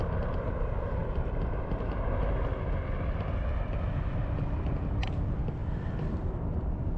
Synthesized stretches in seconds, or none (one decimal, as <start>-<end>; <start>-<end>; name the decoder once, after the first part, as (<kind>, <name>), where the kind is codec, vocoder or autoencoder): 5.6-7.0 (vocoder, BigVGAN v2)